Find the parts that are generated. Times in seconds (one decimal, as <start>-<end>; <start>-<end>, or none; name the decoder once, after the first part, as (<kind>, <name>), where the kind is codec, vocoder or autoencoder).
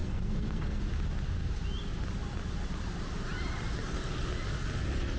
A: 0.0-0.8 (codec, SNAC)